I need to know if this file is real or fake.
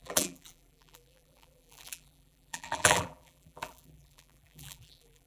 fake